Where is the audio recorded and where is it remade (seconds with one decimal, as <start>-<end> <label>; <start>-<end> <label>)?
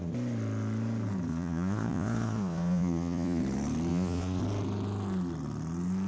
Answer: 0.0-1.3 recorded; 1.3-3.4 remade; 3.4-3.9 recorded; 3.9-4.4 remade; 4.4-6.1 recorded